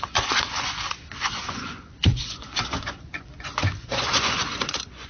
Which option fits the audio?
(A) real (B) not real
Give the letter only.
B